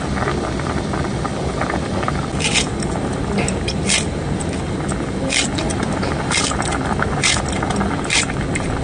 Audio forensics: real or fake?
real